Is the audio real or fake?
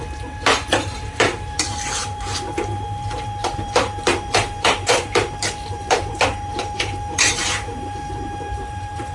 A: fake